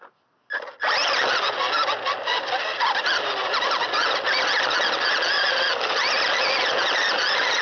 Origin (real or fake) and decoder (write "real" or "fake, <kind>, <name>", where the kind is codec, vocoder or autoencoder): real